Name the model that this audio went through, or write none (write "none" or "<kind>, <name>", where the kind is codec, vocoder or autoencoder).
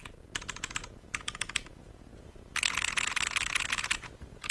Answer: vocoder, Vocos